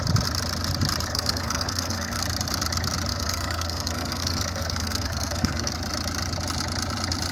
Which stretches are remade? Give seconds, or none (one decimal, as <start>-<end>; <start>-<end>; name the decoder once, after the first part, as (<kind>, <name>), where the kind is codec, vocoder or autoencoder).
1.1-2.2 (codec, SNAC); 3.1-5.7